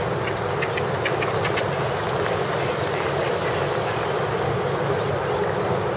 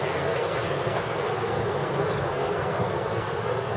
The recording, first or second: first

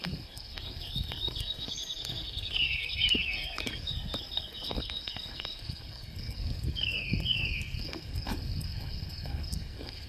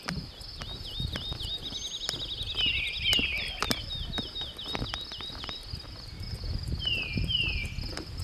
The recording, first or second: second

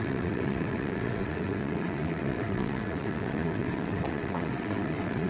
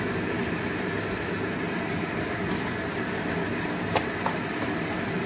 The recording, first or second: second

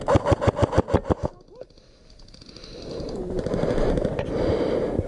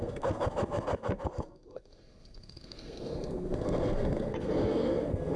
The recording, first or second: first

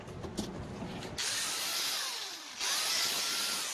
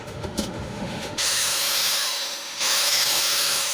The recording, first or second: first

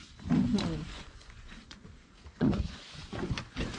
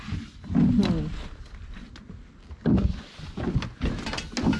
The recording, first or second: second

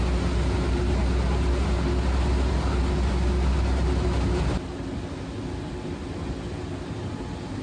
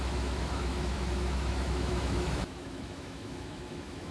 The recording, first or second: first